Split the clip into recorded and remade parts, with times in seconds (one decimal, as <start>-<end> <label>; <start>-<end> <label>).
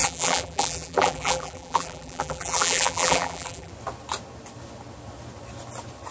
0.0-3.7 remade; 3.7-6.1 recorded